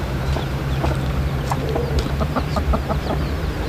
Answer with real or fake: fake